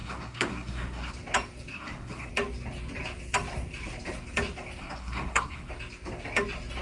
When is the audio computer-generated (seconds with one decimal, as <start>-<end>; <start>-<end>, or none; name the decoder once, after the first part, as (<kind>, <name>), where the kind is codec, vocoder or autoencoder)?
0.0-1.1 (codec, SNAC); 1.7-2.3; 4.8-5.7